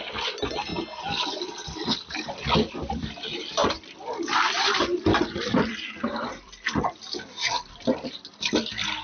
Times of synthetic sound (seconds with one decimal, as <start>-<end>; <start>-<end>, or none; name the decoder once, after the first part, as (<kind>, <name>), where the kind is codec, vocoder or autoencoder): 0.0-0.7 (vocoder, BigVGAN v2); 2.1-9.0